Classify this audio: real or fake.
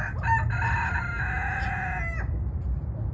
real